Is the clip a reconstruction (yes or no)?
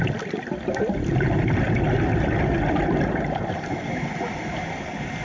no